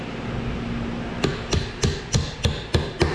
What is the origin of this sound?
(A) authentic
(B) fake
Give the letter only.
A